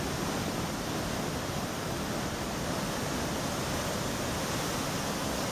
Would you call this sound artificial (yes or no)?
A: no